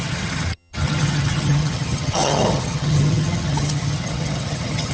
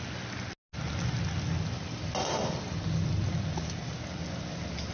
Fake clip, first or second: first